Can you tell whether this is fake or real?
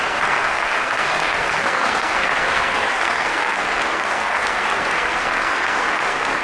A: fake